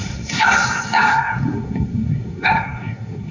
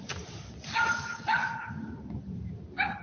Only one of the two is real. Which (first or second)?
second